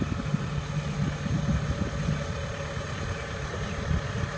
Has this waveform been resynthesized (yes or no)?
no